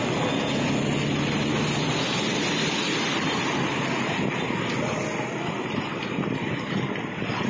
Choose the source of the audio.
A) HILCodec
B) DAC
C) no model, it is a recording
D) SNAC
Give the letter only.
C